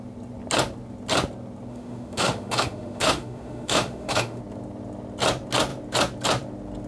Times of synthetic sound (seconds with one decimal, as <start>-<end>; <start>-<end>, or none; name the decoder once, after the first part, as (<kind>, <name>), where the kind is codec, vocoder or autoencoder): 1.7-4.4 (autoencoder, DAC-VAE)

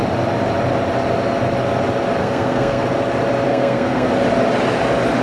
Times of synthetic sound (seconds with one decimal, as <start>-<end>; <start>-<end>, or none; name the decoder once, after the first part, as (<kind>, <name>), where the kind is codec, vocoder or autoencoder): 2.2-2.8 (codec, SNAC); 3.5-4.1

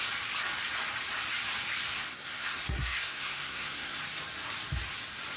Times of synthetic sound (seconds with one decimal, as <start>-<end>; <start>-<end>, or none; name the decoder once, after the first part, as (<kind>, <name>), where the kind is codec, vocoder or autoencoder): 1.9-4.0 (codec, SNAC)

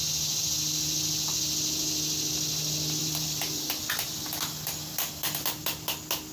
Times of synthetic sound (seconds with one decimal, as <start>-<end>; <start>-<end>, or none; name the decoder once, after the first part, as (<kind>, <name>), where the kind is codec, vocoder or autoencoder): 3.0-3.7 (vocoder, BigVGAN v2)

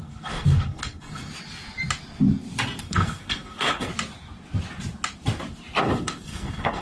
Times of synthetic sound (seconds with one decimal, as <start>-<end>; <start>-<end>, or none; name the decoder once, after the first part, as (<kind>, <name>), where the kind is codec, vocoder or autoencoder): 0.0-1.3 (codec, SNAC); 2.8-3.9; 5.8-6.8